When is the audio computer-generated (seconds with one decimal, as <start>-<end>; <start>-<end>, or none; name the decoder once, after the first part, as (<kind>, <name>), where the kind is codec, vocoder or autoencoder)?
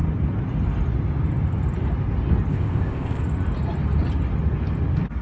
2.5-3.2 (codec, ZipCodec)